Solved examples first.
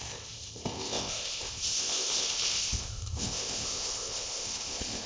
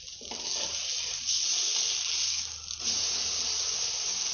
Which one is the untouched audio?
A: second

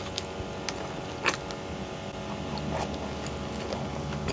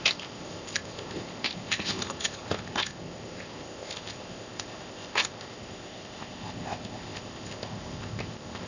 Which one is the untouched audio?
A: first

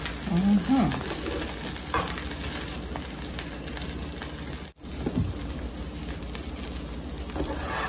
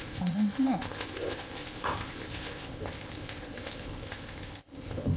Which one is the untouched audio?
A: first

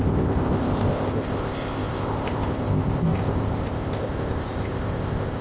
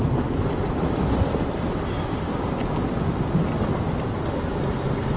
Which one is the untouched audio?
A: second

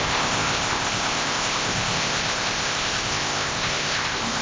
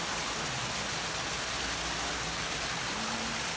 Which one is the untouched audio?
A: second